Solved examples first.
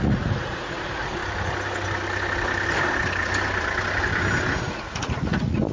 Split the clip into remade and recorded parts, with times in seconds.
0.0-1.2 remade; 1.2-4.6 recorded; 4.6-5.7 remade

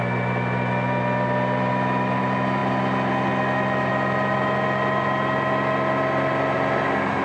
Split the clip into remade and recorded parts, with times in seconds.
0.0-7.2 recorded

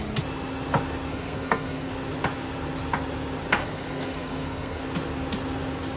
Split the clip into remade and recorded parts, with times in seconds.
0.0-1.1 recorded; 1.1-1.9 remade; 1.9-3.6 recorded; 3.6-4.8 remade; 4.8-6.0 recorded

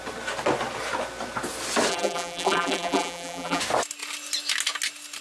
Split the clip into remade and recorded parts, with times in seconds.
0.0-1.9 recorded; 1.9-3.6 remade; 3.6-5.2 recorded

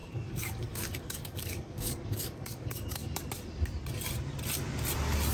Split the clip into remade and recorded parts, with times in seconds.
0.0-3.2 remade; 3.2-5.3 recorded